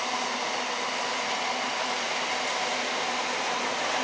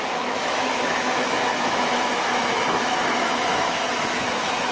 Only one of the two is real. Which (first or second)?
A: first